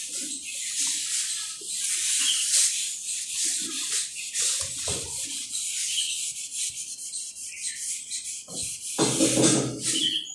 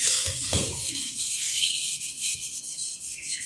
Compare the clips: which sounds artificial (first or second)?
second